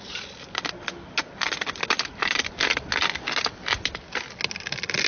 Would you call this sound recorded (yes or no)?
yes